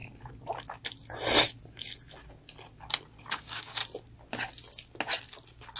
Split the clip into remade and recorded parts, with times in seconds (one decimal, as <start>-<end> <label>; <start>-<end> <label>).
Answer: 0.0-3.2 recorded; 3.2-3.8 remade; 3.8-5.8 recorded